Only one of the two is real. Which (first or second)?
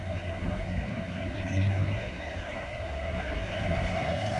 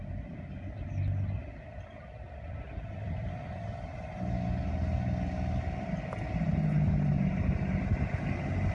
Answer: second